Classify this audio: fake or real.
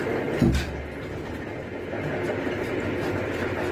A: real